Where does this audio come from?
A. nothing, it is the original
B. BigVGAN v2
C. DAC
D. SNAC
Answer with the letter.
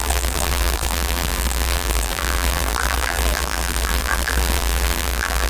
B